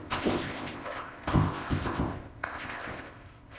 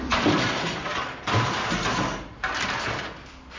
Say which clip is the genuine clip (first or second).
second